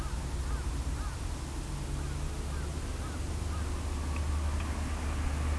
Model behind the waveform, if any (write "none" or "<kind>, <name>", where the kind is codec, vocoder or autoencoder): none